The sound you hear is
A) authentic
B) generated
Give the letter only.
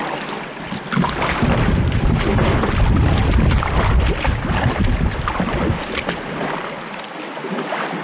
A